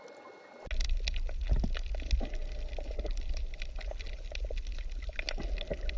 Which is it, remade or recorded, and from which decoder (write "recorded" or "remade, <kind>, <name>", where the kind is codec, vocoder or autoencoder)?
recorded